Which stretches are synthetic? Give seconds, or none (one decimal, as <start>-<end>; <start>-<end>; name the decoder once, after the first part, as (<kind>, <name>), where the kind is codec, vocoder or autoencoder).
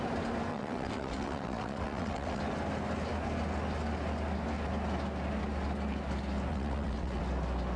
0.5-2.4 (vocoder, WaveNeXt); 6.5-7.2